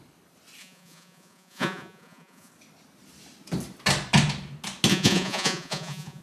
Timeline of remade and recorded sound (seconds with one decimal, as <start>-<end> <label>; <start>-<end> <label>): 0.0-0.6 recorded; 0.6-2.5 remade; 2.5-4.9 recorded; 4.9-6.2 remade